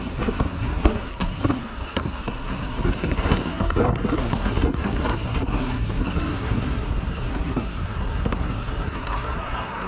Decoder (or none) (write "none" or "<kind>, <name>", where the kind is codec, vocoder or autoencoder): codec, SNAC